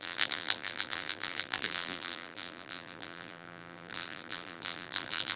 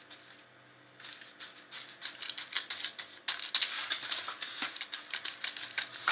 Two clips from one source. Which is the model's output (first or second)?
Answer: first